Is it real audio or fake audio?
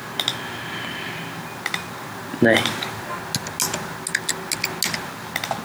real